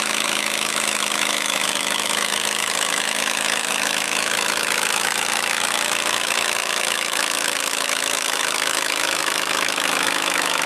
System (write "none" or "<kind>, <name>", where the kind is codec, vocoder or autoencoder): autoencoder, DAC-VAE